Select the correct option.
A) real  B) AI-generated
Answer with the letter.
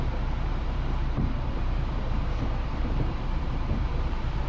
B